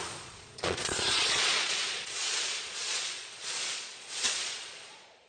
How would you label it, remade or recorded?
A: remade